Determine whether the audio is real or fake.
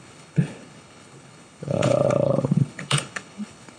fake